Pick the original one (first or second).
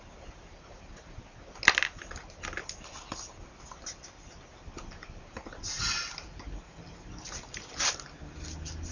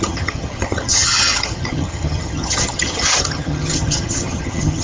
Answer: first